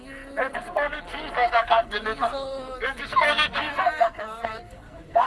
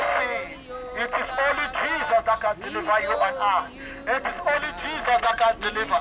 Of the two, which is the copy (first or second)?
first